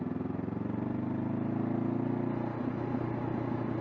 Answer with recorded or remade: recorded